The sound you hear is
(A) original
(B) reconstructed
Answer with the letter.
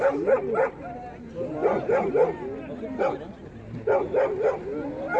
A